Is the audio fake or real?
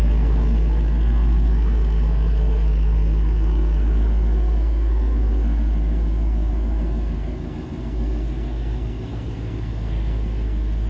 fake